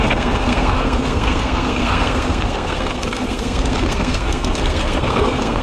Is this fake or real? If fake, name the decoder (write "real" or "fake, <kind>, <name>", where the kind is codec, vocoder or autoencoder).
fake, codec, SNAC